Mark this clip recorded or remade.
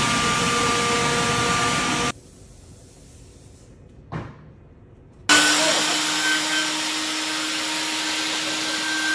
recorded